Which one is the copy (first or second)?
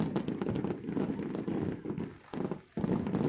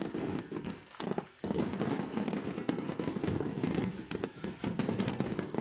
second